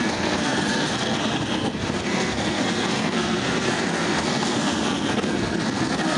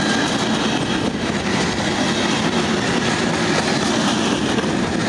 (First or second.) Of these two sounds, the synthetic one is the first